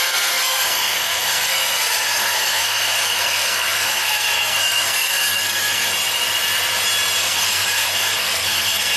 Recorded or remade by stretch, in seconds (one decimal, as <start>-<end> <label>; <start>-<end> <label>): 0.0-5.9 remade; 5.9-7.2 recorded; 7.2-9.0 remade